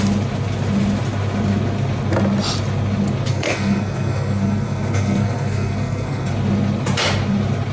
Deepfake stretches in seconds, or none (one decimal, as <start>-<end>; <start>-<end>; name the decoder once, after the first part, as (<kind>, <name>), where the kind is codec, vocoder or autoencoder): 3.3-6.3 (codec, SNAC)